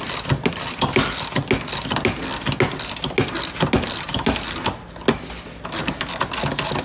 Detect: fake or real real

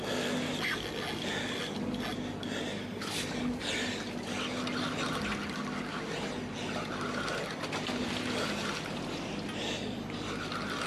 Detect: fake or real real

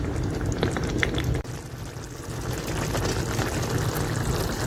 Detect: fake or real real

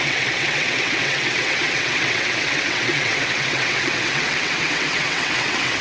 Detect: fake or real fake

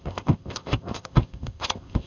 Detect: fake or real fake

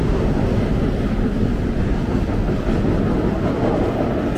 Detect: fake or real real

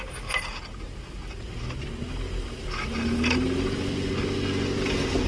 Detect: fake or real real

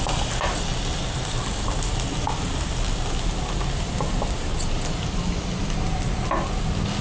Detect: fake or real real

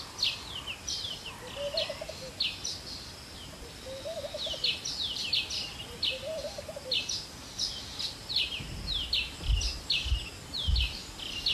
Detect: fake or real real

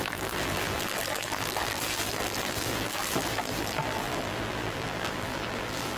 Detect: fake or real fake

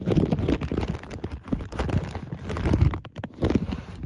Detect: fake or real real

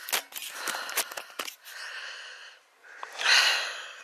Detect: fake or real real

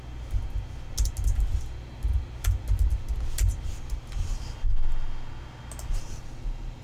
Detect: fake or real real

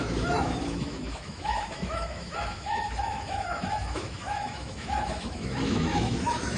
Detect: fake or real fake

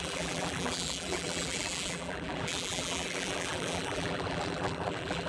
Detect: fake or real fake